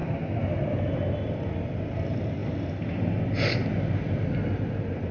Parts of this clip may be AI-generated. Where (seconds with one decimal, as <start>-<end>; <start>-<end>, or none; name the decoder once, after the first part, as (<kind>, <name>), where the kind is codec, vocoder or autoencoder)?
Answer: none